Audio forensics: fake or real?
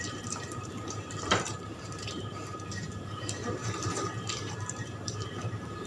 fake